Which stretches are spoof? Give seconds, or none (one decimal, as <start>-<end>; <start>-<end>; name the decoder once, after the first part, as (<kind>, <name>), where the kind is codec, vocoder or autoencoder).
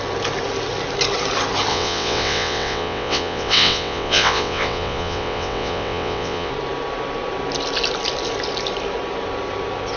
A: 1.7-6.5 (vocoder, WaveNeXt)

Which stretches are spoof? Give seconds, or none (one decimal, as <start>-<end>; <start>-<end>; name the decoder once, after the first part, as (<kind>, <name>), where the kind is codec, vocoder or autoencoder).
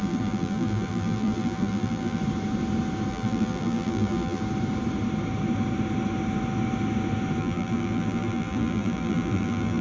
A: 0.0-2.2 (vocoder, BigVGAN v2); 3.1-4.4; 7.4-9.8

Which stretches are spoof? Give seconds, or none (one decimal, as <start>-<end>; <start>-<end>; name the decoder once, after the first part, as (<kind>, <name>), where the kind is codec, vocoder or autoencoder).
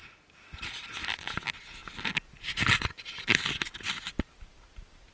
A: none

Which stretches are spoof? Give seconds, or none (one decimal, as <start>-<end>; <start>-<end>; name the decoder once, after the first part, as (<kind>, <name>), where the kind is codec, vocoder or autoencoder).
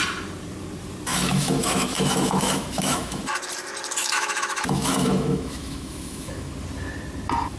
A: 1.1-3.2 (autoencoder, DAC-VAE); 4.0-6.5